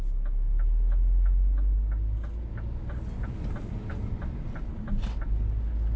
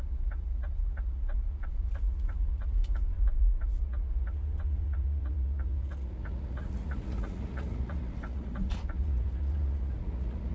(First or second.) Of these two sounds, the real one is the first